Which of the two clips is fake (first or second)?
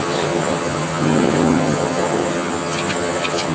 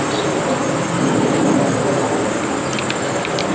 first